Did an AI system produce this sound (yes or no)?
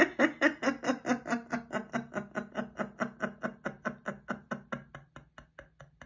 no